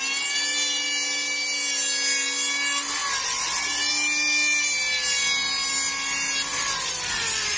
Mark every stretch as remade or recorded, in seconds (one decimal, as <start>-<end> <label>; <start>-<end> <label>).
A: 0.0-7.6 recorded